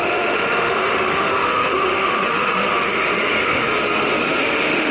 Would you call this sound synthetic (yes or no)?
yes